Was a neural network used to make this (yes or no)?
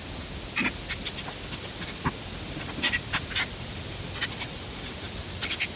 no